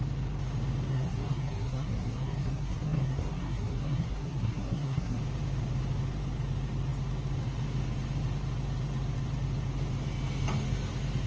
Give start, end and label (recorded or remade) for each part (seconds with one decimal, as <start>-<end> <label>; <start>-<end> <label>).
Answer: 0.0-0.9 recorded; 0.9-5.2 remade; 5.2-11.3 recorded

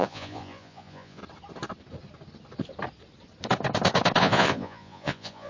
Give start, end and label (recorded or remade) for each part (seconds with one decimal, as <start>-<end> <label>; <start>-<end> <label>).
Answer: 0.0-1.2 remade; 1.2-4.2 recorded; 4.2-5.5 remade

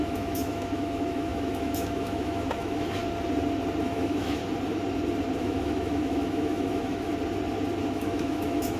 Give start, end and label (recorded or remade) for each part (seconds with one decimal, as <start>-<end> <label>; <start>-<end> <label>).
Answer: 0.0-3.0 remade; 3.0-3.8 recorded; 3.8-4.4 remade; 4.4-5.4 recorded; 5.4-7.1 remade; 7.1-7.9 recorded; 7.9-8.8 remade

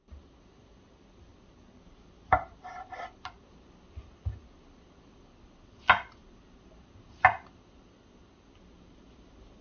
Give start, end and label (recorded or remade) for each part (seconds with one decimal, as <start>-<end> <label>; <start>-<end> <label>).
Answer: 0.0-9.6 recorded

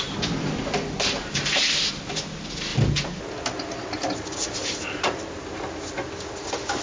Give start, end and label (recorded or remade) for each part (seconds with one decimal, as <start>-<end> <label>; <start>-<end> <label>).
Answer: 0.0-6.8 recorded

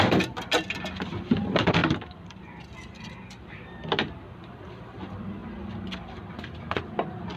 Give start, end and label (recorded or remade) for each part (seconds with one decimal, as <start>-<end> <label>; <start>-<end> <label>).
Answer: 0.0-5.4 remade; 5.4-7.4 recorded

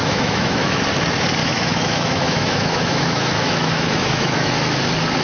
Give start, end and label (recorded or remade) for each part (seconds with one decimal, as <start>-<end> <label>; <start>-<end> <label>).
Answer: 0.0-0.8 remade; 0.8-1.4 recorded; 1.4-4.5 remade; 4.5-5.2 recorded

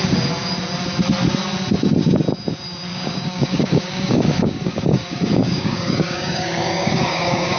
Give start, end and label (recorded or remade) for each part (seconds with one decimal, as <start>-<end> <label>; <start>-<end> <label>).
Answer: 0.0-2.9 recorded; 2.9-7.6 remade